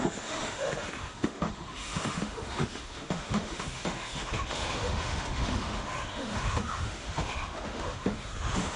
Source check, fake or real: fake